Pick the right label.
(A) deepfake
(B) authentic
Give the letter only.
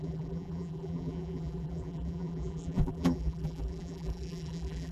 A